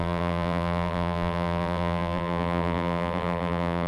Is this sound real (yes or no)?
no